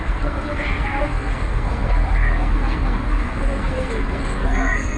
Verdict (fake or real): fake